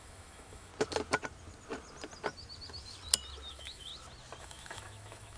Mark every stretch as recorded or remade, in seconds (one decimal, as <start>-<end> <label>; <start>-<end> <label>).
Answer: 0.0-0.7 remade; 0.7-3.5 recorded; 3.5-3.9 remade; 3.9-4.4 recorded; 4.4-5.4 remade